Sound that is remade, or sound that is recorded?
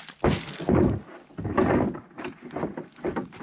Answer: recorded